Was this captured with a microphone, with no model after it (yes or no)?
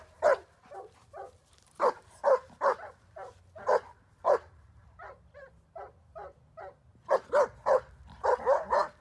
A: yes